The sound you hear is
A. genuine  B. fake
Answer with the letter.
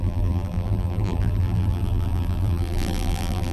B